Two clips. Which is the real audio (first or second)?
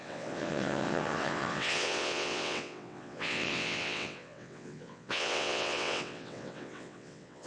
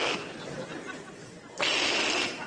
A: second